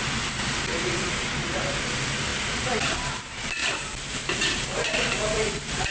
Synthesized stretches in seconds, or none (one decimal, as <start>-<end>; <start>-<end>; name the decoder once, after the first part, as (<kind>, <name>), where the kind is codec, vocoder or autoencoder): 3.6-5.9 (vocoder, BigVGAN v2)